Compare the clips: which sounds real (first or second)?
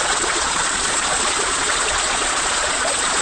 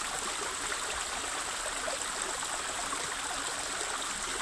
second